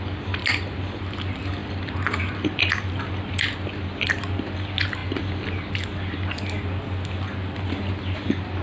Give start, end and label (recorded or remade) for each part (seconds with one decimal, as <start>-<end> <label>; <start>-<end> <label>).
0.0-8.6 recorded